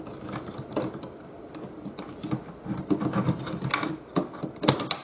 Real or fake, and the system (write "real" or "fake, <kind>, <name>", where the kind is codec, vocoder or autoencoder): real